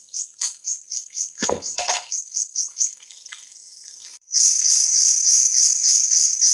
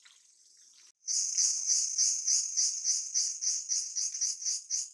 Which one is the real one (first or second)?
second